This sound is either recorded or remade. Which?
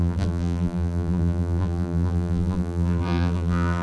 remade